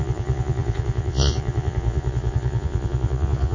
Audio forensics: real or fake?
fake